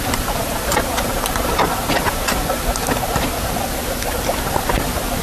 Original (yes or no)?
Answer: yes